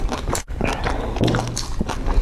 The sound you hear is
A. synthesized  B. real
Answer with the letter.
B